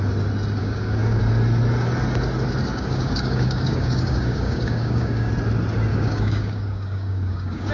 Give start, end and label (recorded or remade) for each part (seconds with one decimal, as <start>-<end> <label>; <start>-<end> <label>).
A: 0.0-0.6 recorded; 0.6-1.2 remade; 1.2-2.7 recorded; 2.7-5.3 remade; 5.3-5.9 recorded; 5.9-7.7 remade